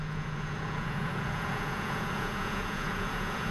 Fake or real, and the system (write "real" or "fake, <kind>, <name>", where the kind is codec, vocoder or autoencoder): fake, vocoder, Vocos